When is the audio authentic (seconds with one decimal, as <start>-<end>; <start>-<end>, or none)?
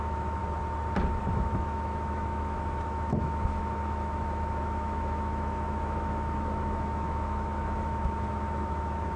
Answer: 0.4-1.2